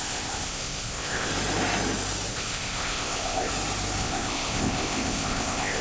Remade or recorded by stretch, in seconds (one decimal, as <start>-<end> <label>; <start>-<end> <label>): 0.0-1.3 remade; 1.3-2.3 recorded; 2.3-3.5 remade; 3.5-4.0 recorded; 4.0-5.8 remade